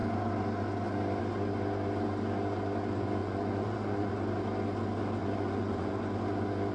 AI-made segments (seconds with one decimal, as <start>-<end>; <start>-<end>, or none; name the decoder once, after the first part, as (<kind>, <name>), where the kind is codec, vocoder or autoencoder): 3.2-4.1 (vocoder, Vocos); 5.2-5.9